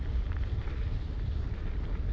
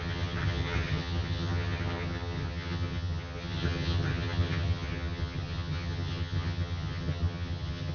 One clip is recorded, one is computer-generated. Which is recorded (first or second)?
first